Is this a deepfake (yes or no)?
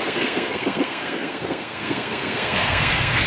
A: yes